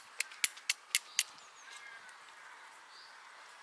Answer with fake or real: real